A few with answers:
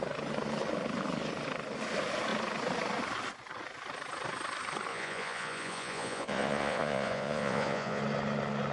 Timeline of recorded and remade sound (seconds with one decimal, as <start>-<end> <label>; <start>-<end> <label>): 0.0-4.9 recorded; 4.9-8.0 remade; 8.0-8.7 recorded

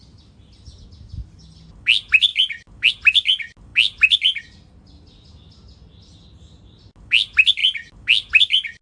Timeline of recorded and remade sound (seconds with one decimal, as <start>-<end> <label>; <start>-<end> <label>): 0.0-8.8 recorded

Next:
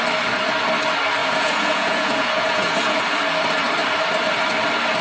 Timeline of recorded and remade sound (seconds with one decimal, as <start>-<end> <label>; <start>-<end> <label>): 0.0-1.2 recorded; 1.2-3.0 remade; 3.0-5.0 recorded

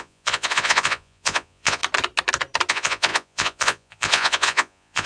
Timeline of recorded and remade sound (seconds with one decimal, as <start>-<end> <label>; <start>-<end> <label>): 0.0-1.8 remade; 1.8-2.7 recorded; 2.7-5.1 remade

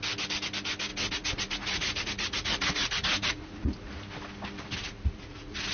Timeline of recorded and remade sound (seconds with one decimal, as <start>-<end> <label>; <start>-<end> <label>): 0.0-0.9 recorded; 0.9-3.9 remade; 3.9-4.8 recorded; 4.8-5.7 remade